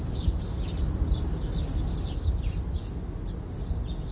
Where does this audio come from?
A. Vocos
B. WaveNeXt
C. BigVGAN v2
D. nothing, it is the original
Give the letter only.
D